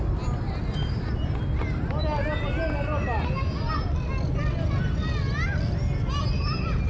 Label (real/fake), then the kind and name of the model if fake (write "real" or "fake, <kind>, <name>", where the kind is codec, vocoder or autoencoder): real